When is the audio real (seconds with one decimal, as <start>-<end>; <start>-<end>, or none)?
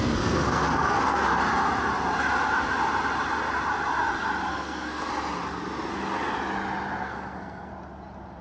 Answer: 1.4-4.5; 5.1-7.0; 7.7-8.4